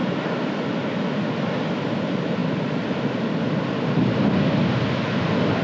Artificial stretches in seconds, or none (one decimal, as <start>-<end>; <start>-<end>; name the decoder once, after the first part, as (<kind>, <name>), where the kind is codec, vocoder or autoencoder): none